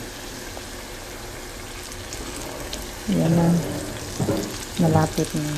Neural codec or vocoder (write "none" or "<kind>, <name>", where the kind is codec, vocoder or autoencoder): none